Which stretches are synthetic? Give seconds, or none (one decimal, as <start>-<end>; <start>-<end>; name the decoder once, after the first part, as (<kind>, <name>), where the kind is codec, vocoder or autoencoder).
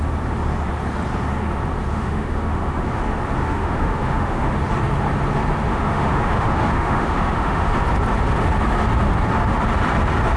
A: 1.9-3.0 (autoencoder, DAC-VAE); 3.4-4.5; 5.7-7.7